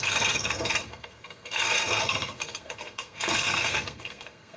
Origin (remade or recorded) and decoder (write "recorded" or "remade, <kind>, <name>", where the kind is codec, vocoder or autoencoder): remade, codec, SNAC